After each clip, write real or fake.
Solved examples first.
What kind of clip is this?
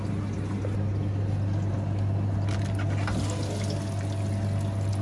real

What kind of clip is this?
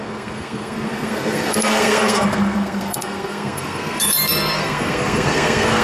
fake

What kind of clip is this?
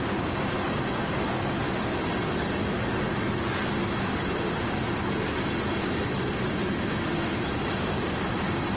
real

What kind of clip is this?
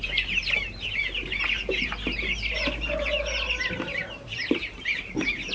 real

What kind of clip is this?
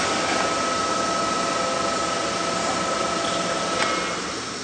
real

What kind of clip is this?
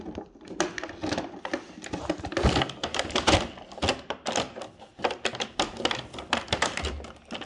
real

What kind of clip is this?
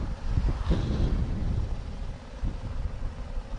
real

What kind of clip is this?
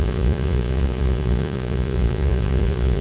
fake